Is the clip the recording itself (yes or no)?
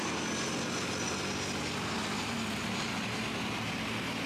yes